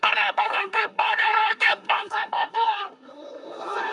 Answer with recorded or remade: remade